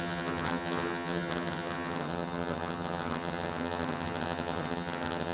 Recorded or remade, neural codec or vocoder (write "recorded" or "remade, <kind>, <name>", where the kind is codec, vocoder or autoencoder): remade, vocoder, HiFi-GAN